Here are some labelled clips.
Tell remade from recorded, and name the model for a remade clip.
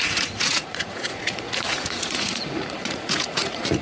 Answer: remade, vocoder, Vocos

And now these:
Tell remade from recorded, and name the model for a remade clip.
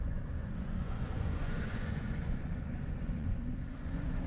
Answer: remade, vocoder, Vocos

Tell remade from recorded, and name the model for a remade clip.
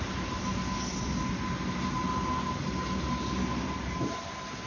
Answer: recorded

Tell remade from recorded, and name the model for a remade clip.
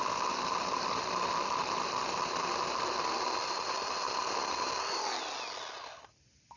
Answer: recorded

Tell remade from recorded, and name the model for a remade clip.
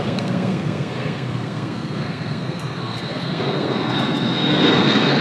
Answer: remade, codec, SNAC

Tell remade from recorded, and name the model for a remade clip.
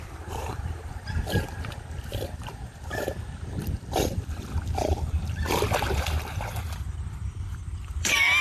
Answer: remade, vocoder, BigVGAN v2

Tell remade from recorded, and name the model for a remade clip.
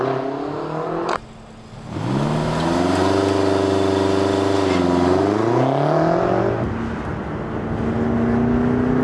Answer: recorded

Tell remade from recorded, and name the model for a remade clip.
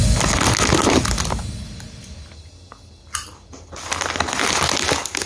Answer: recorded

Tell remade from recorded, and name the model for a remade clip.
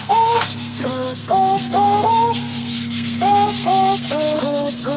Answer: remade, codec, SNAC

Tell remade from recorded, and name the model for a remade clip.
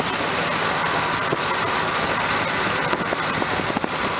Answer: recorded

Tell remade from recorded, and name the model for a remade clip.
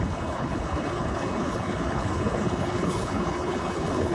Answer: remade, codec, HILCodec